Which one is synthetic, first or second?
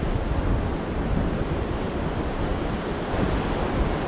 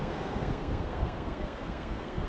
second